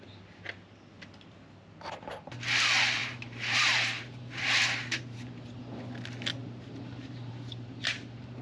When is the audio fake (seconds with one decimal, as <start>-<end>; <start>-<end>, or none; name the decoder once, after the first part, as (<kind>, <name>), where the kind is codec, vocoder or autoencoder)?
3.0-5.3 (vocoder, BigVGAN v2); 6.4-8.4